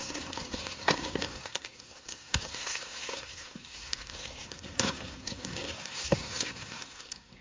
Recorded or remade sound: remade